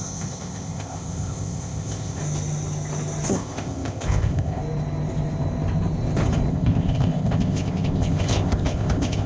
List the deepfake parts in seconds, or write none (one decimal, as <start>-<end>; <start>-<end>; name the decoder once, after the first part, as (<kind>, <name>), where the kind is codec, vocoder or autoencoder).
0.0-2.2 (codec, ZipCodec); 3.3-4.6; 6.5-9.3